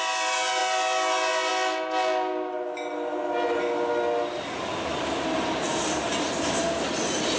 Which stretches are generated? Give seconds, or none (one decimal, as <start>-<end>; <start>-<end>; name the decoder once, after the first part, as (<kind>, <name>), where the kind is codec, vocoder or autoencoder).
none